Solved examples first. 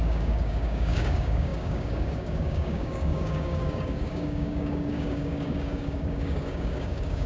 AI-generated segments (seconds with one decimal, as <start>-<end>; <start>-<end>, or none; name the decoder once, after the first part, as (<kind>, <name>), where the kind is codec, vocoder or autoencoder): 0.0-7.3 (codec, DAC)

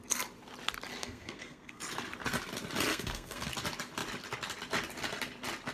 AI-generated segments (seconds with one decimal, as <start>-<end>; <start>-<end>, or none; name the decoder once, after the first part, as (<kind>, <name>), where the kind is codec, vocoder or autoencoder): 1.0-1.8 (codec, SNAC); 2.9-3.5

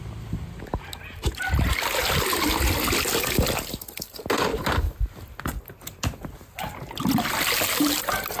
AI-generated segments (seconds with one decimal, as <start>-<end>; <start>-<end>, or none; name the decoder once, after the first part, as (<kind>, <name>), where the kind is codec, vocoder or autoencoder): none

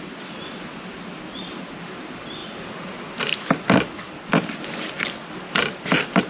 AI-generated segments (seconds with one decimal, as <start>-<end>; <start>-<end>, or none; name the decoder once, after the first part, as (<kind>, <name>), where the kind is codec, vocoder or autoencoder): none

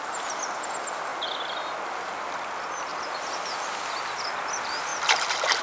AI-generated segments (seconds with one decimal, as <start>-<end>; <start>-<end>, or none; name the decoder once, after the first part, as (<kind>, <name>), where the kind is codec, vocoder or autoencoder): none

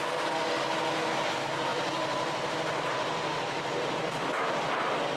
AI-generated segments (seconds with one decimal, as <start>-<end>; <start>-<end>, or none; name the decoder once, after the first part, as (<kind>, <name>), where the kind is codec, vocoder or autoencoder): 1.7-4.8 (vocoder, BigVGAN v2)

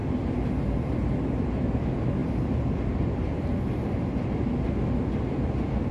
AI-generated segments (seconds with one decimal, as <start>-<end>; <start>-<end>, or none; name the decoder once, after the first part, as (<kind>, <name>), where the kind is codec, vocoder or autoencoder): none